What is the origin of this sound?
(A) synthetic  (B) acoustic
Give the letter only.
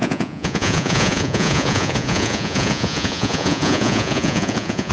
A